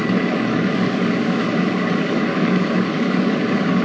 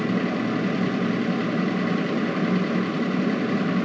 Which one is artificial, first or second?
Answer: first